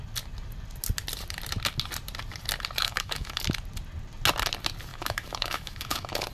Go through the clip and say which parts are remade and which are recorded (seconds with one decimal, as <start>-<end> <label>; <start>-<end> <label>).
0.0-2.8 recorded; 2.8-3.4 remade; 3.4-4.9 recorded; 4.9-6.3 remade